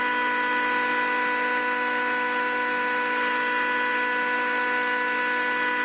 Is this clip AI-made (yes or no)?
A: no